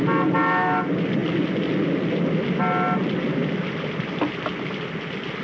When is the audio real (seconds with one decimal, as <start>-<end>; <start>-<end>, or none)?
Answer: 0.0-5.4

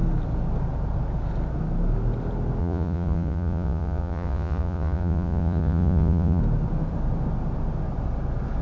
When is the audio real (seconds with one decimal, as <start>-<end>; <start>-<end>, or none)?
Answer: 0.0-2.6; 6.4-8.6

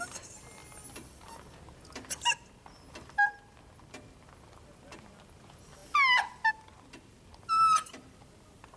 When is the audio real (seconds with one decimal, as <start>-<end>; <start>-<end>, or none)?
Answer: 0.0-8.8

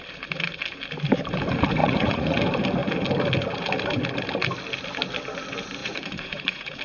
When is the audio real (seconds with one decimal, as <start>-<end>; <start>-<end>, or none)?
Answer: 0.0-1.8; 2.4-5.8

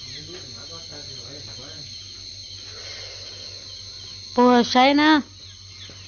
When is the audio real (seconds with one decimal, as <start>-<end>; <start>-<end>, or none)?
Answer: 0.0-6.1

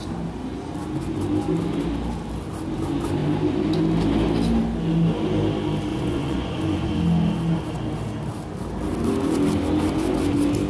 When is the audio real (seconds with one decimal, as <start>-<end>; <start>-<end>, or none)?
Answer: 0.0-5.9; 6.9-10.7

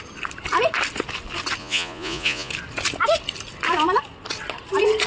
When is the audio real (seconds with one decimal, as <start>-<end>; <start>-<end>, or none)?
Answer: 0.0-1.6; 2.5-5.1